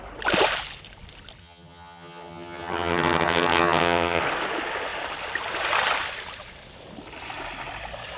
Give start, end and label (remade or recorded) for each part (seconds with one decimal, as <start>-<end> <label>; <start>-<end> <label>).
0.0-1.4 recorded; 1.4-4.2 remade; 4.2-8.2 recorded